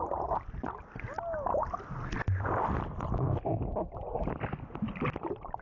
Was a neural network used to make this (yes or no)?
no